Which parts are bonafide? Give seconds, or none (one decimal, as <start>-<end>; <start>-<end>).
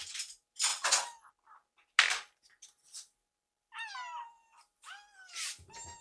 0.0-0.7; 1.3-6.0